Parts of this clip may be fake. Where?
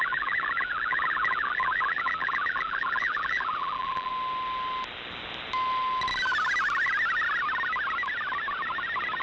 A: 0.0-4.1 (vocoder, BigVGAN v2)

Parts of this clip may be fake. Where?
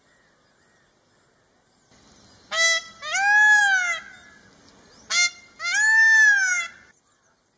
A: none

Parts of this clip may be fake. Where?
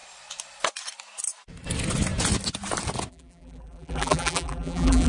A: 3.1-5.1 (vocoder, BigVGAN v2)